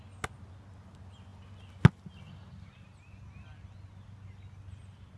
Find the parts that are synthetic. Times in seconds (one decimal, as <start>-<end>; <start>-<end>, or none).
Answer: none